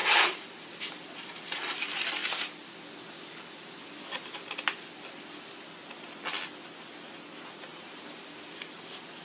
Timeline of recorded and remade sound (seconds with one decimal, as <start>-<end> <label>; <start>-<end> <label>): 0.0-1.4 remade; 1.4-2.2 recorded; 2.2-2.7 remade; 2.7-7.7 recorded; 7.7-8.4 remade; 8.4-9.2 recorded